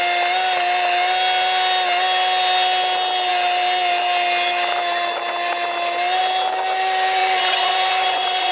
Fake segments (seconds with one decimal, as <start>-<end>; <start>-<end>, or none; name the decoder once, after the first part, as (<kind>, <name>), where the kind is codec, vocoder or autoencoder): 7.2-8.5 (vocoder, Vocos)